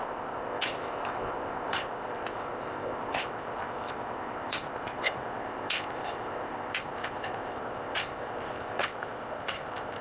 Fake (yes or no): yes